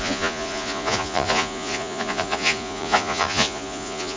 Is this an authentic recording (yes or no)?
no